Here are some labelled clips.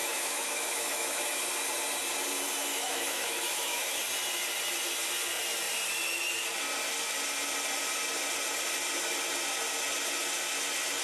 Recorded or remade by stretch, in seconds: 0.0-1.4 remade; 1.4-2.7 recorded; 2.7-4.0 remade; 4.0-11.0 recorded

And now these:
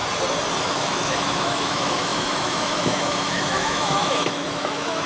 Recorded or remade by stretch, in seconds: 0.0-0.6 recorded; 0.6-5.1 remade

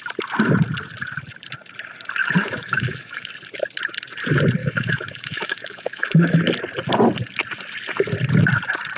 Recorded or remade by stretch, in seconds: 0.0-2.2 recorded; 2.2-3.3 remade; 3.3-4.6 recorded; 4.6-6.4 remade; 6.4-9.0 recorded

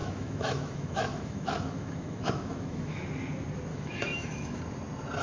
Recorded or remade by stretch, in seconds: 0.0-3.0 remade; 3.0-3.7 recorded; 3.7-4.6 remade; 4.6-5.2 recorded

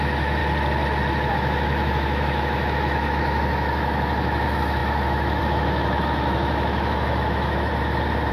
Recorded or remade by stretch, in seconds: 0.0-0.4 remade; 0.4-1.3 recorded; 1.3-7.7 remade; 7.7-8.3 recorded

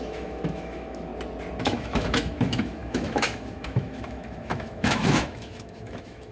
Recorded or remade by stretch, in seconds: 0.0-1.1 remade; 1.1-1.6 recorded; 1.6-6.3 remade